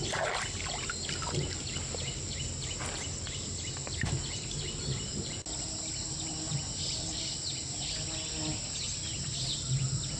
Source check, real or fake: real